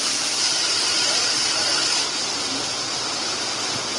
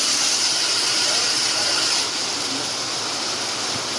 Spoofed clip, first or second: first